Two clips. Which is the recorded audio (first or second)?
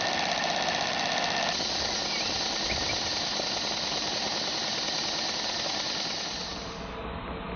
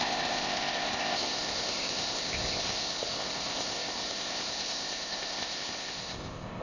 first